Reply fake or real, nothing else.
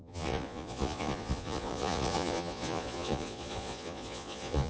fake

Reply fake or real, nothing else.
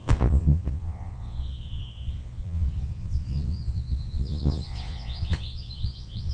fake